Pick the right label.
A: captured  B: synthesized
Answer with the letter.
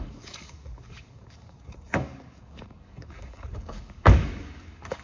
B